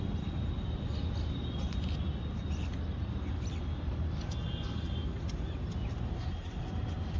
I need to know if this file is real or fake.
real